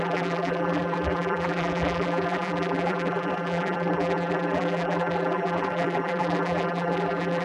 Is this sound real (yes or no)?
no